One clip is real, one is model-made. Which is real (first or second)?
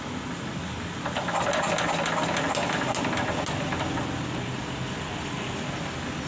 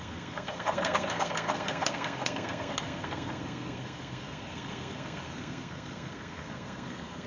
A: first